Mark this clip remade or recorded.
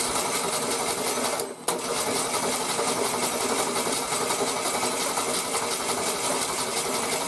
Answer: recorded